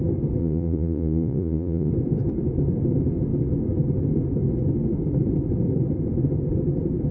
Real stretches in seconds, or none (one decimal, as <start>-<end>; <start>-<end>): 0.0-0.4; 1.9-7.1